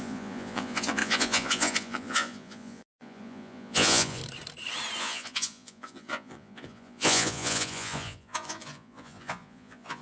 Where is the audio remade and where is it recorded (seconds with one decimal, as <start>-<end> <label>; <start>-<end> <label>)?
0.0-4.2 remade; 4.2-5.0 recorded; 5.0-10.0 remade